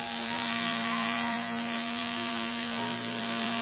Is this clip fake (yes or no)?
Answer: yes